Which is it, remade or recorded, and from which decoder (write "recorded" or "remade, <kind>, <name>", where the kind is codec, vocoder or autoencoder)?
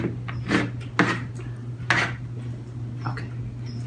recorded